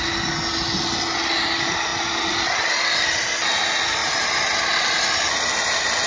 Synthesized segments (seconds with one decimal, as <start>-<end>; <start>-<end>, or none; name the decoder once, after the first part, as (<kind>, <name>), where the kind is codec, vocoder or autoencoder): none